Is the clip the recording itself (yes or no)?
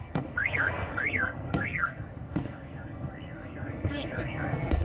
no